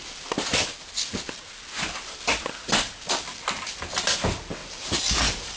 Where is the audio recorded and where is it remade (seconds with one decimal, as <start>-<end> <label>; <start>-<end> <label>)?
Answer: 0.0-5.6 recorded